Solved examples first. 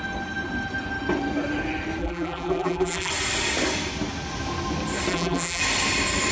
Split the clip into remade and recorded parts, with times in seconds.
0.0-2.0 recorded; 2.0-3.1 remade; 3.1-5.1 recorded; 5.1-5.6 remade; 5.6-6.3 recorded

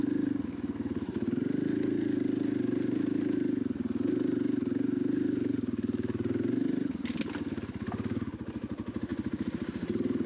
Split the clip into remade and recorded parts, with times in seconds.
0.0-10.3 recorded

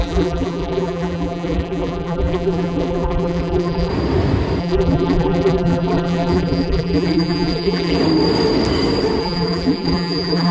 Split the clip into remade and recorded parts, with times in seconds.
0.0-3.9 remade; 3.9-4.6 recorded; 4.6-8.0 remade; 8.0-9.2 recorded; 9.2-10.5 remade

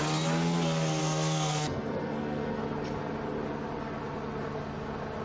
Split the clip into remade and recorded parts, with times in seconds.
0.0-1.0 recorded; 1.0-2.6 remade; 2.6-5.2 recorded

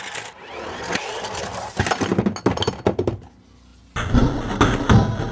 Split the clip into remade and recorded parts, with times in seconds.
0.0-5.3 recorded

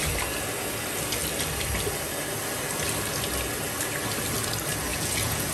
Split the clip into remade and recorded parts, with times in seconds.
0.0-4.9 recorded; 4.9-5.5 remade

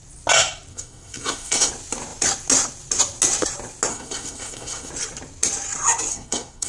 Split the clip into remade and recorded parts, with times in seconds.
0.0-0.7 recorded; 0.7-1.7 remade; 1.7-3.9 recorded; 3.9-4.9 remade; 4.9-6.1 recorded; 6.1-6.7 remade